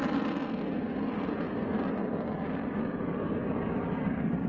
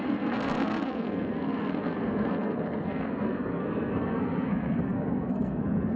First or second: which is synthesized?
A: second